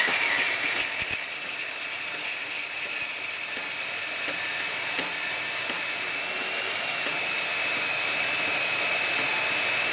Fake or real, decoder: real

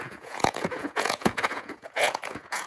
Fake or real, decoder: fake, vocoder, Vocos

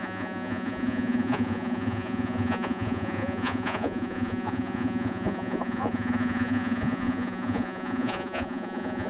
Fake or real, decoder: fake, vocoder, Vocos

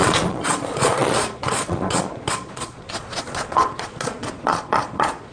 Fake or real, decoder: fake, vocoder, Vocos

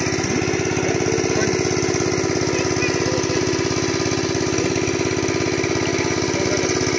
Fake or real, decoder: real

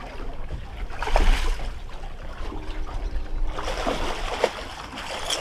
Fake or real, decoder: real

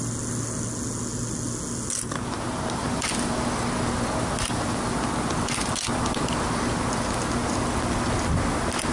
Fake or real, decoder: real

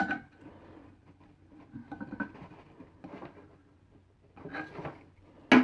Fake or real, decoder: real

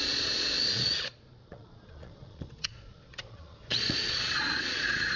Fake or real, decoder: fake, vocoder, Vocos